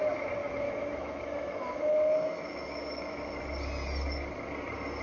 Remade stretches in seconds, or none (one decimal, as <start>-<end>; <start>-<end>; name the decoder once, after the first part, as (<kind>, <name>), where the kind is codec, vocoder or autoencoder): 0.4-3.4 (autoencoder, DAC-VAE)